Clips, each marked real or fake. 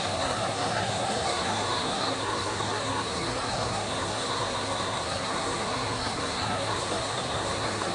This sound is fake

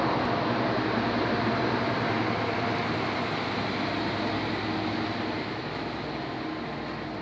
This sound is real